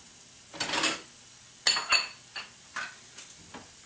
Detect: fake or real real